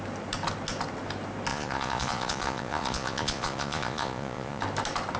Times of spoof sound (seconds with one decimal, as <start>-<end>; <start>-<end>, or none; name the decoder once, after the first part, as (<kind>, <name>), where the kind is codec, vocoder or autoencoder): 1.5-4.6 (vocoder, Vocos)